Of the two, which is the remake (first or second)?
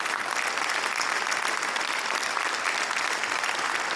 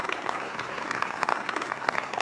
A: second